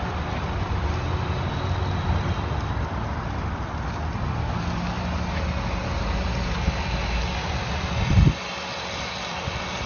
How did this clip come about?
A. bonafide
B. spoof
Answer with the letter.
A